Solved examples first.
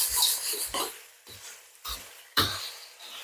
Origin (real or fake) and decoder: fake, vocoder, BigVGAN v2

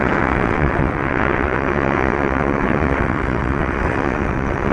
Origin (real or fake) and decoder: fake, vocoder, WaveNeXt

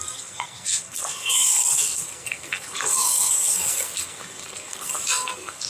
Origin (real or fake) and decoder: fake, codec, SNAC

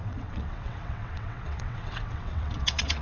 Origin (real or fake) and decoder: fake, vocoder, WaveNeXt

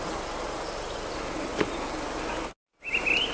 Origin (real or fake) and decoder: real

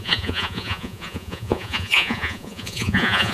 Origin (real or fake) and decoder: fake, vocoder, Vocos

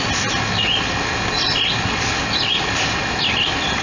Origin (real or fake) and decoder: real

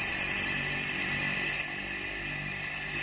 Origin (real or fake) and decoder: real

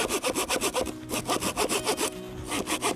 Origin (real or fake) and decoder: real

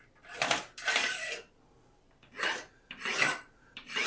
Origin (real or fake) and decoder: fake, vocoder, BigVGAN v2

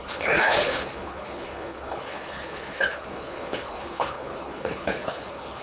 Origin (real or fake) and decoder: fake, codec, HILCodec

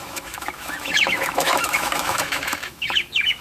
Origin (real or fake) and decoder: fake, autoencoder, DAC-VAE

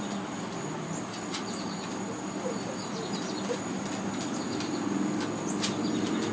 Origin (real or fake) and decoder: real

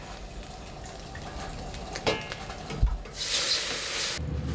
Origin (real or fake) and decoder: real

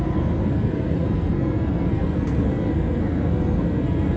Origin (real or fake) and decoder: fake, codec, SNAC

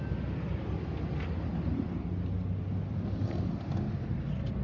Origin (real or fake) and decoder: real